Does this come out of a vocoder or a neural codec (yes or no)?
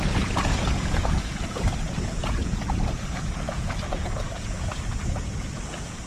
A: yes